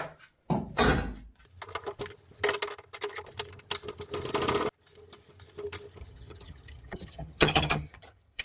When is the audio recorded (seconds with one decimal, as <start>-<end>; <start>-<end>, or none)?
0.0-6.0